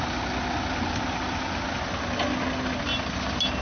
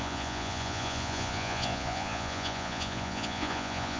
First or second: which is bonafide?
first